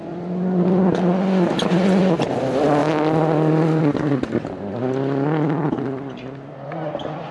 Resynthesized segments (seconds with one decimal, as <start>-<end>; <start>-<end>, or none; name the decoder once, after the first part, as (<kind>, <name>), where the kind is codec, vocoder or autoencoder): none